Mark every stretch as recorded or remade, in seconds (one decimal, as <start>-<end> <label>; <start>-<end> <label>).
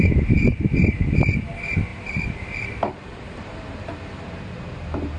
0.0-1.9 recorded; 1.9-5.2 remade